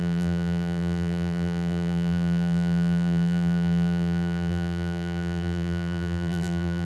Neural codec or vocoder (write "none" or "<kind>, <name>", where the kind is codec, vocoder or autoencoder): vocoder, BigVGAN v2